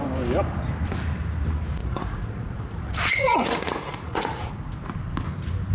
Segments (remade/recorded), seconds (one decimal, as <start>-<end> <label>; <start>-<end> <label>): 0.0-1.8 recorded; 1.8-4.5 remade; 4.5-5.7 recorded